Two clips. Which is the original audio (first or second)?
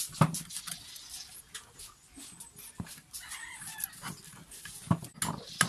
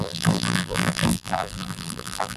first